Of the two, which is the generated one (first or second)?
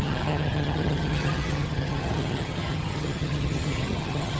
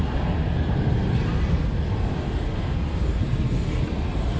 first